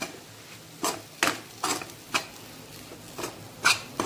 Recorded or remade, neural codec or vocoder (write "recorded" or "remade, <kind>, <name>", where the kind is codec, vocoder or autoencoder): recorded